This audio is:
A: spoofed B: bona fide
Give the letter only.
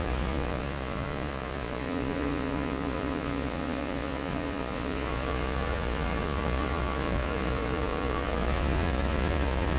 A